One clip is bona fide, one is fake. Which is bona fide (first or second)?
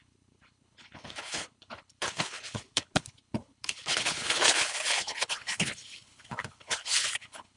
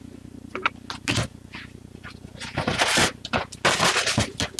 second